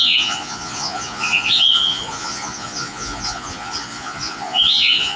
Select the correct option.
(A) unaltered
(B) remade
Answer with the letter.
B